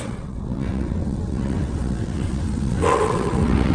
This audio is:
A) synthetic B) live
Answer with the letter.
A